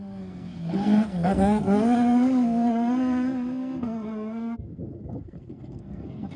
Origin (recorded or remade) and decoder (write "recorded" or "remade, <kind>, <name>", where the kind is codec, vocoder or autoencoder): remade, codec, SNAC